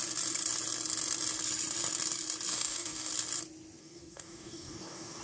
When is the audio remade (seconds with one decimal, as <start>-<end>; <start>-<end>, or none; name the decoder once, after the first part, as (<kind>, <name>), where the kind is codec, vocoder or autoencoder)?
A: 2.5-3.1 (codec, DAC); 3.8-5.2

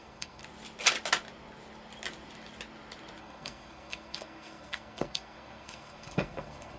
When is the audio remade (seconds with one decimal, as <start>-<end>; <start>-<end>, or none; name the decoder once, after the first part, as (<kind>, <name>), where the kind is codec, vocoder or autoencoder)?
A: 0.0-0.4 (codec, SNAC); 3.2-6.8